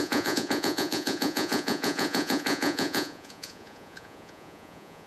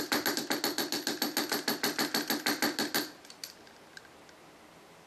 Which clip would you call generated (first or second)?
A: first